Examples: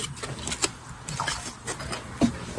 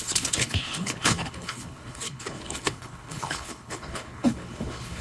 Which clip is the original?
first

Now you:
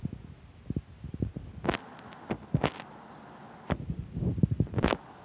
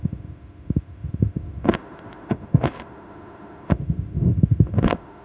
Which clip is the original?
first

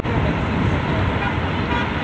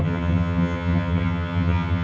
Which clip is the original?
first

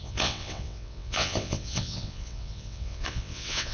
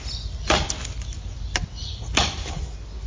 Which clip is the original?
second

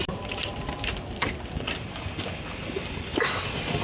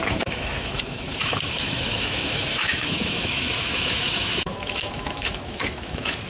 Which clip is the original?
first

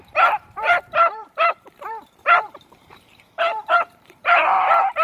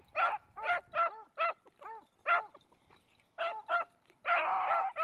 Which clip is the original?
second